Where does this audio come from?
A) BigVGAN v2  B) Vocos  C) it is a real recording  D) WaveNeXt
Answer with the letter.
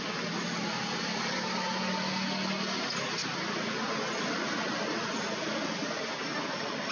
C